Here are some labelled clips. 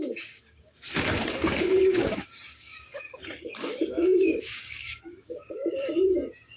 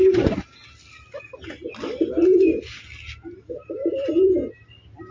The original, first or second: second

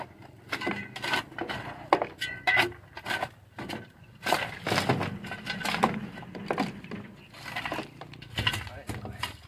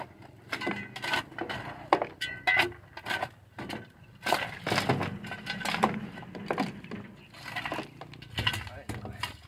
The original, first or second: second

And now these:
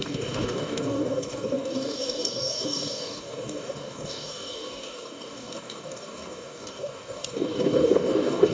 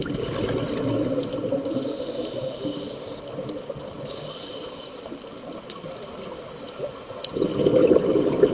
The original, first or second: second